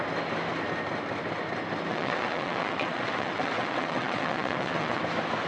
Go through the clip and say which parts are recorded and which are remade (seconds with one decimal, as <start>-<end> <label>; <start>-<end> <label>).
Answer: 0.0-1.9 recorded; 1.9-5.0 remade; 5.0-5.5 recorded